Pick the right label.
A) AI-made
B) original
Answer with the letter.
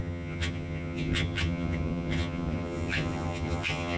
A